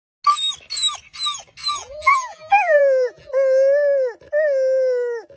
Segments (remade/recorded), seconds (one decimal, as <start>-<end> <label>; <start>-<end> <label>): 0.0-1.8 recorded; 1.8-3.3 remade; 3.3-5.4 recorded